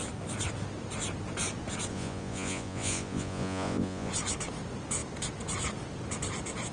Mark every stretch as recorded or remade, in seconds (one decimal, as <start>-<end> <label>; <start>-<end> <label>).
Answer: 0.0-1.9 recorded; 1.9-4.1 remade; 4.1-6.7 recorded

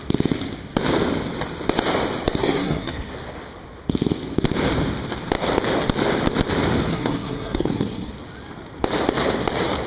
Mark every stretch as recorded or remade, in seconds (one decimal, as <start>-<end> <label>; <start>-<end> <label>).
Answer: 0.0-2.4 recorded; 2.4-3.1 remade; 3.1-6.9 recorded; 6.9-8.1 remade; 8.1-9.9 recorded